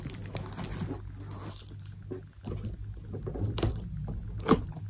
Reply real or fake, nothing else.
real